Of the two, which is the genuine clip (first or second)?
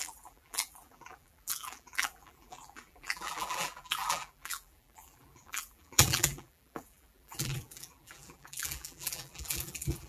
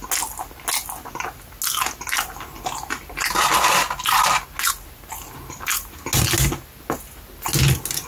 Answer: second